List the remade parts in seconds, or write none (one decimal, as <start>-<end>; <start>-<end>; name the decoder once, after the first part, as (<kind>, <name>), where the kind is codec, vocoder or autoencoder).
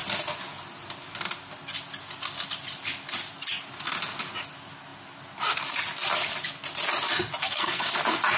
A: 7.4-7.9 (codec, SNAC)